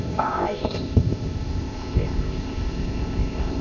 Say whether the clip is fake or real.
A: fake